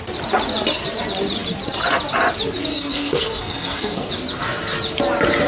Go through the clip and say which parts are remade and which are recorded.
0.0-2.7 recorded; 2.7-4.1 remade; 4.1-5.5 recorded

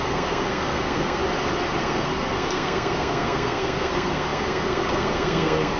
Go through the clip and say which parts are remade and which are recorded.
0.0-1.2 remade; 1.2-1.8 recorded; 1.8-5.8 remade